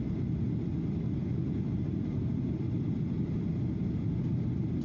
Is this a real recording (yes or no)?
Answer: yes